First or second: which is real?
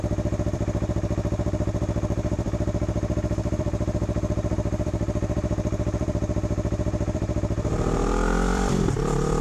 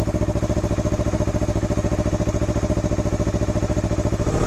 second